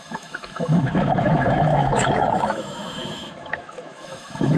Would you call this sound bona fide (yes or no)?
no